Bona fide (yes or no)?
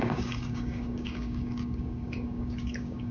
no